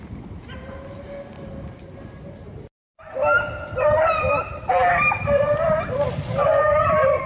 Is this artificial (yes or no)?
no